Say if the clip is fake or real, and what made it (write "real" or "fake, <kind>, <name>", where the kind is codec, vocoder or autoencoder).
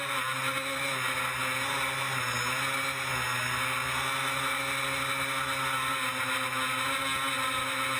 real